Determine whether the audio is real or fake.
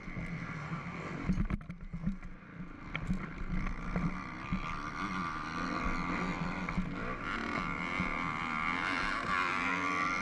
real